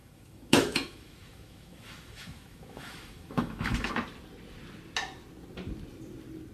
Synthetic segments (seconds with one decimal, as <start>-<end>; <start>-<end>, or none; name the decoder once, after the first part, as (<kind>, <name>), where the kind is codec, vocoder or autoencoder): 0.0-3.9 (autoencoder, DAC-VAE)